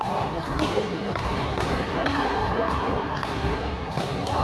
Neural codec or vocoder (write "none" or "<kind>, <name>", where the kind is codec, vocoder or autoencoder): codec, SNAC